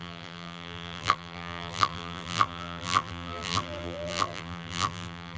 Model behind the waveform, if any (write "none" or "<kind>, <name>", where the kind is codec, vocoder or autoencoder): vocoder, BigVGAN v2